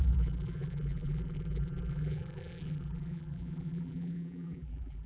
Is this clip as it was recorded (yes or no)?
no